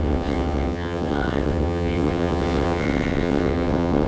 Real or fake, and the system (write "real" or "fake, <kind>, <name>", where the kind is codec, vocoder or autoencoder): fake, vocoder, WaveNeXt